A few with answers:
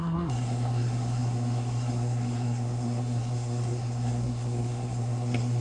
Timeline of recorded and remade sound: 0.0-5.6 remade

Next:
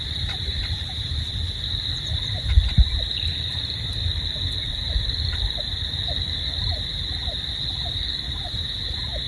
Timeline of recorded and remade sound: 0.0-0.5 recorded; 0.5-1.4 remade; 1.4-9.3 recorded

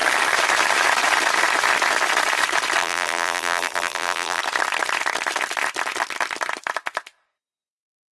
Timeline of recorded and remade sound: 0.0-2.8 recorded; 2.8-4.4 remade; 4.4-8.1 recorded

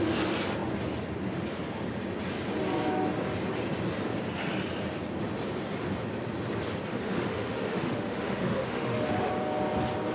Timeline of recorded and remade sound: 0.0-6.9 recorded; 6.9-9.3 remade; 9.3-10.1 recorded